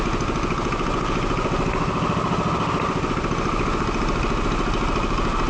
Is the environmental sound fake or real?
real